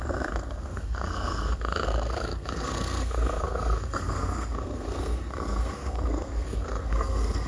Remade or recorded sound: remade